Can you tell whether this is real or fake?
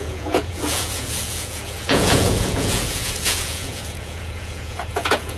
fake